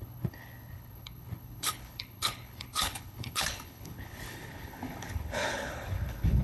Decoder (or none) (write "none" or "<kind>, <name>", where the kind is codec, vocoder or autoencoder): codec, HILCodec